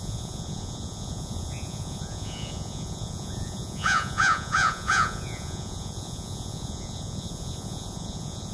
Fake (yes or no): yes